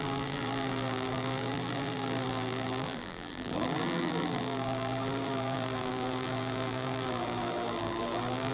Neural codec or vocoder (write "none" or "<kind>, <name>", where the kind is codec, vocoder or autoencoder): vocoder, BigVGAN v2